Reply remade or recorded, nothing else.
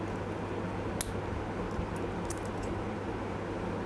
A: recorded